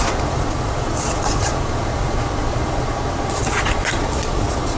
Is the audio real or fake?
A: fake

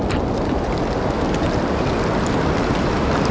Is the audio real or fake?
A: real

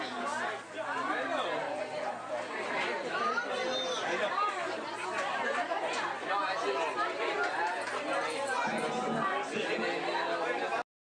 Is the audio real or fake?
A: real